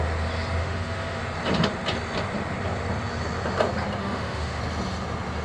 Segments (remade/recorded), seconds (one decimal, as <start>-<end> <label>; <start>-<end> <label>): 0.0-0.6 recorded; 0.6-1.2 remade; 1.2-4.0 recorded; 4.0-4.6 remade; 4.6-5.4 recorded